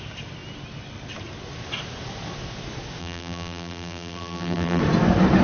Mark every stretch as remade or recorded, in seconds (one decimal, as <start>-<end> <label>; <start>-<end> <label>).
0.0-3.0 recorded; 3.0-4.8 remade; 4.8-5.4 recorded